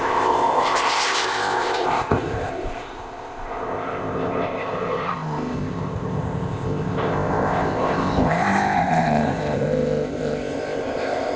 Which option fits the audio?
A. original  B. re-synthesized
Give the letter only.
B